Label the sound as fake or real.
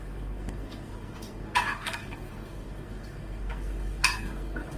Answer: fake